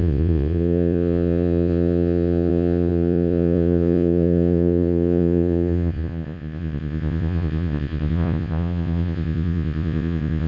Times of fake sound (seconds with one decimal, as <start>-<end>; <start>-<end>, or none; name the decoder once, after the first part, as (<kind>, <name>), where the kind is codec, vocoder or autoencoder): 0.0-10.5 (vocoder, Vocos)